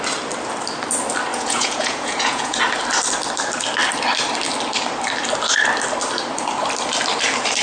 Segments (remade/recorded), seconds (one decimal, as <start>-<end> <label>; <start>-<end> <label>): 0.0-1.3 recorded; 1.3-2.6 remade; 2.6-7.6 recorded